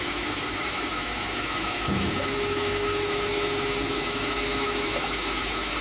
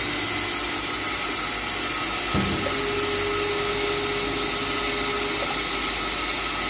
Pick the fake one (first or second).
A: first